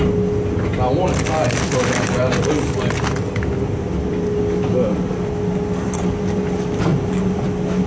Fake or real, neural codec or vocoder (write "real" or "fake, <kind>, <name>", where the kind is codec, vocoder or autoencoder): real